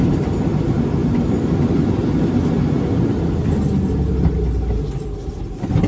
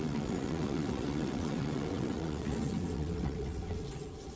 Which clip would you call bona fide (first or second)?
first